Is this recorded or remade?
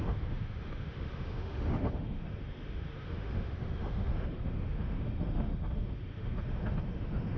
remade